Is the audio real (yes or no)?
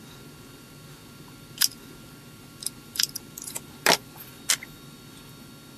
yes